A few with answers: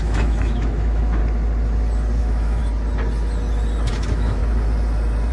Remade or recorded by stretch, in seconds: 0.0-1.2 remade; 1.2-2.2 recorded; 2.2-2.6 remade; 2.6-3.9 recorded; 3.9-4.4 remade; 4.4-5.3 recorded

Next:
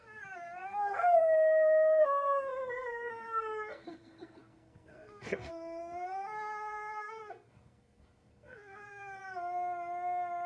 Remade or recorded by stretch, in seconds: 0.0-9.2 remade; 9.2-10.5 recorded

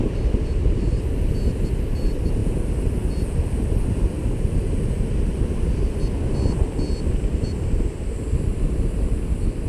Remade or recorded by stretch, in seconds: 0.0-1.3 remade; 1.3-9.7 recorded

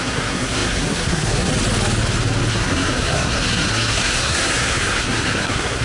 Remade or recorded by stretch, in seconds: 0.0-1.5 remade; 1.5-2.5 recorded; 2.5-5.8 remade